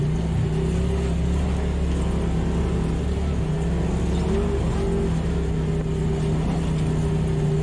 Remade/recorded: recorded